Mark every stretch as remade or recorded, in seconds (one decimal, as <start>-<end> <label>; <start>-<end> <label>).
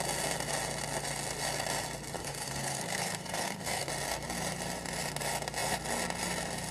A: 0.0-2.2 recorded; 2.2-3.9 remade; 3.9-6.7 recorded